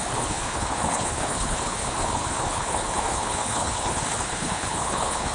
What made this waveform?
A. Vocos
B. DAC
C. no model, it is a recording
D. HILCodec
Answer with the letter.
D